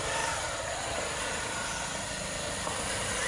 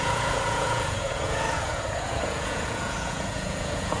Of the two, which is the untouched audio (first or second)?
first